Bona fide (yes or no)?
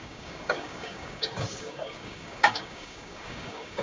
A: no